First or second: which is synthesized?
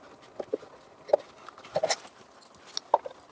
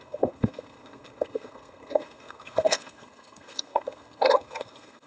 second